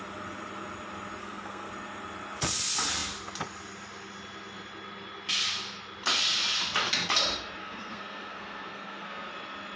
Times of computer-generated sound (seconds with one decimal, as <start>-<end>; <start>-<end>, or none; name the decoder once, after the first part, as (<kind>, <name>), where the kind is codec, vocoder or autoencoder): 1.2-1.7 (codec, SNAC); 7.6-9.3